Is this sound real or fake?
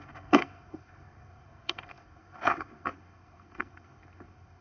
fake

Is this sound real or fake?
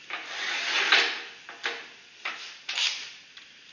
real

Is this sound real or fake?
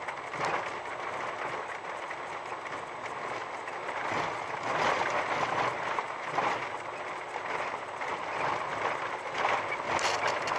real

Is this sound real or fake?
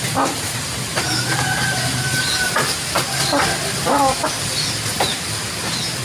real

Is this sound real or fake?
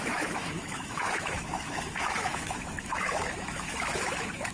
fake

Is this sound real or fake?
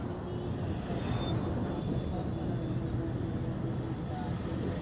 real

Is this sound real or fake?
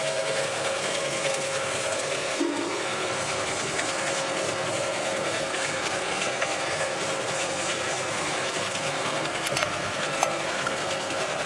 fake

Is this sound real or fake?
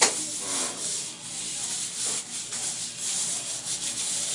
real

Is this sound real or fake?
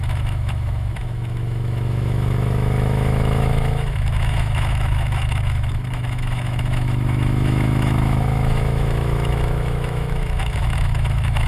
fake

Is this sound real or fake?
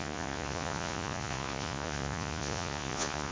fake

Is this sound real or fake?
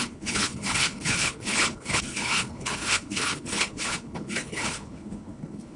fake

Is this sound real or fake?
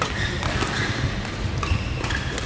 real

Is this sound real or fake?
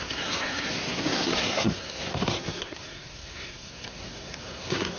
fake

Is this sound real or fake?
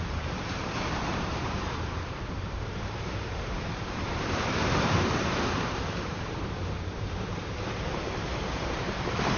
fake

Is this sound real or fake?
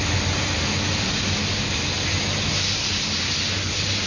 real